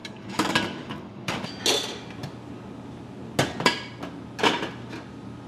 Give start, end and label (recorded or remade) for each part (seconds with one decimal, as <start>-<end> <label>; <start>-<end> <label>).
0.0-1.5 remade; 1.5-5.5 recorded